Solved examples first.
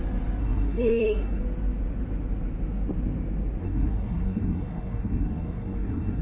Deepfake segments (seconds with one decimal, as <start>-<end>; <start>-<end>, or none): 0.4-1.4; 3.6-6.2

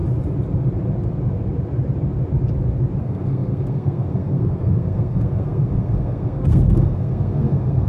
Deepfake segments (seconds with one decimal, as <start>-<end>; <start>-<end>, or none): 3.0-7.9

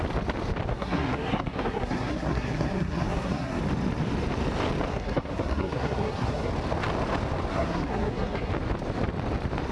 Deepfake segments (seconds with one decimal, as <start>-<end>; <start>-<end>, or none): 0.7-3.6; 4.9-6.5; 7.5-8.5